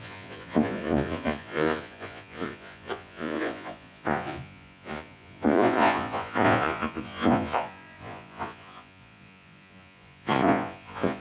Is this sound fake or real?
fake